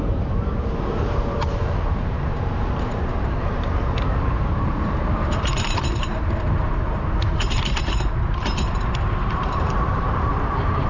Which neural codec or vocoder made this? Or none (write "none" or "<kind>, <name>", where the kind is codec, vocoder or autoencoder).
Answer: vocoder, BigVGAN v2